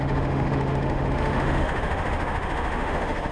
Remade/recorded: remade